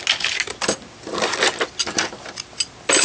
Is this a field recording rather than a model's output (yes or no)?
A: yes